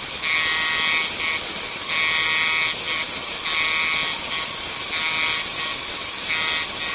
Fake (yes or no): no